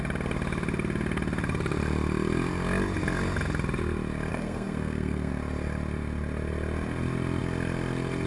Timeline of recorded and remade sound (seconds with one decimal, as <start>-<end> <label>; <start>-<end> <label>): 0.0-4.3 recorded; 4.3-5.3 remade; 5.3-8.3 recorded